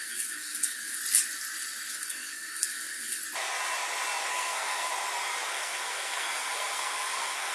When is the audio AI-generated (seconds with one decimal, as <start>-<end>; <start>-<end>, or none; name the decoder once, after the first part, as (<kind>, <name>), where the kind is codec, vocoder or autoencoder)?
0.0-1.0 (codec, SNAC); 1.9-3.2; 4.3-4.9; 5.5-7.5

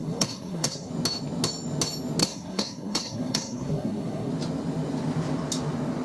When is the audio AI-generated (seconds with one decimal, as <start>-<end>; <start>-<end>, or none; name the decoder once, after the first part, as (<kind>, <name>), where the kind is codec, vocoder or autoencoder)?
0.0-0.9 (codec, SNAC); 2.2-4.3